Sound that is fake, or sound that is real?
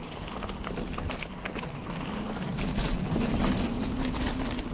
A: real